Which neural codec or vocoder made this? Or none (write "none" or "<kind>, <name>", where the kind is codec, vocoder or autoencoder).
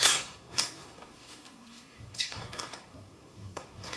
codec, SNAC